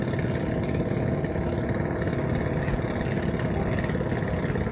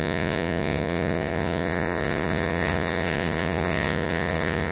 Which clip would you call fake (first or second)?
second